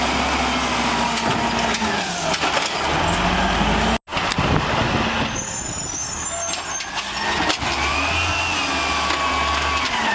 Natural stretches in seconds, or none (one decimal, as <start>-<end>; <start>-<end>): 0.0-10.1